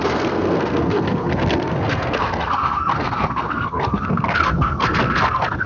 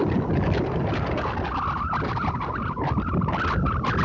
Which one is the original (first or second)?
second